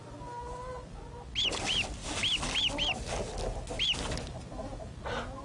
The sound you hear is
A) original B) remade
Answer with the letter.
A